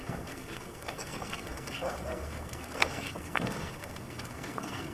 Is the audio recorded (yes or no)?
no